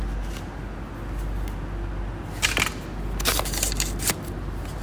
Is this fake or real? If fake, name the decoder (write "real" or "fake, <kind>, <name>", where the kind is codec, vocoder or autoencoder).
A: real